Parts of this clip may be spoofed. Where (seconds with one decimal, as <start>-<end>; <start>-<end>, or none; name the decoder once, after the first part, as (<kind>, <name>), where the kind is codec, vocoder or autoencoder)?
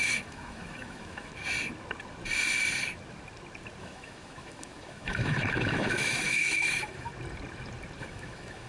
0.0-1.3 (autoencoder, DAC-VAE); 3.8-7.1; 8.0-8.7